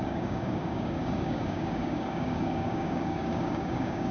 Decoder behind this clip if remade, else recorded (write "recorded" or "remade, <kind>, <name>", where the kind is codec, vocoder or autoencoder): remade, codec, DAC